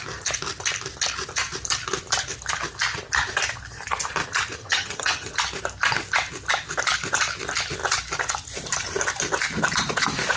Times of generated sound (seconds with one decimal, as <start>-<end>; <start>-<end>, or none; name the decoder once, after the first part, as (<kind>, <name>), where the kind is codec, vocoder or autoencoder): 4.6-5.3 (vocoder, HiFi-GAN)